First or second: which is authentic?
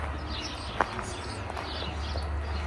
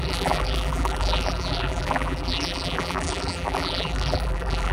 first